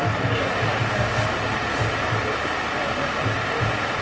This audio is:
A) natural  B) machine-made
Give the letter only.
A